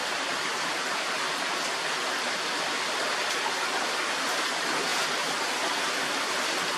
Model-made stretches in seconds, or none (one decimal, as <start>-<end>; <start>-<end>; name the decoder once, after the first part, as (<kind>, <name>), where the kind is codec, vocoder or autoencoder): none